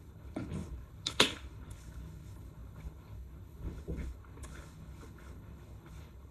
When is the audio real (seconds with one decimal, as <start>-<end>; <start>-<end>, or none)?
none